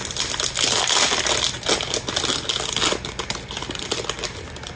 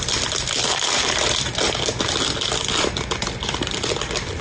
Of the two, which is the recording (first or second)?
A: first